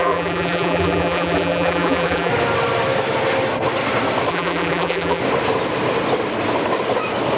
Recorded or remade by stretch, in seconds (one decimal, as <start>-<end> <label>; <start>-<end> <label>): 0.0-2.3 remade; 2.3-4.3 recorded; 4.3-5.2 remade; 5.2-7.4 recorded